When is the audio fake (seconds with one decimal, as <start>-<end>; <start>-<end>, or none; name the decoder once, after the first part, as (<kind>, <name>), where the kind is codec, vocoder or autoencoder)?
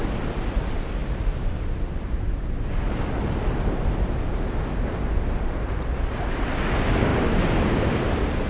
none